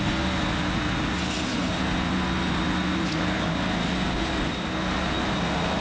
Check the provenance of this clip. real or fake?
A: real